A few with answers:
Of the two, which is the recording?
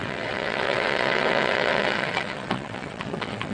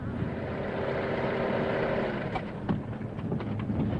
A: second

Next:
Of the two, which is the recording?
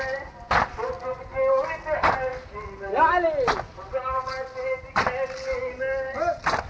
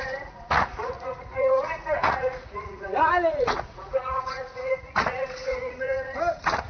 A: first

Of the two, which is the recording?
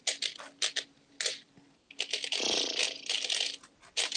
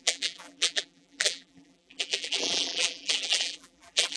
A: first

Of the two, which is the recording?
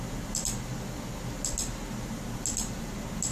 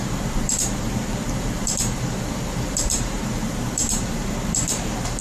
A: first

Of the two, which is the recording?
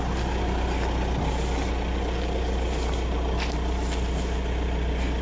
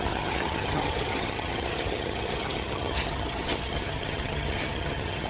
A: first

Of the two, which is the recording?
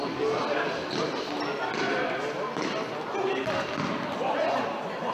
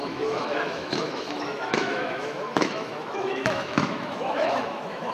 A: first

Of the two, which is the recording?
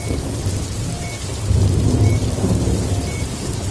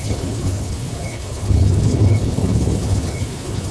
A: first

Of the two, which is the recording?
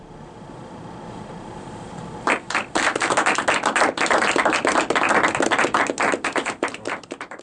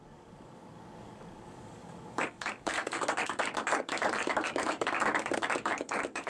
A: first